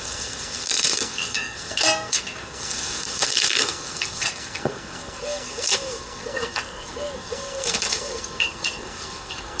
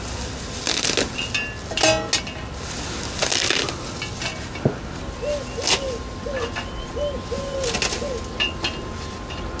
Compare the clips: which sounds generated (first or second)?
first